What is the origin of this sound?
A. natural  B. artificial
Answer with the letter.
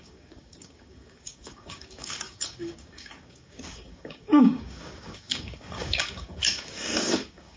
B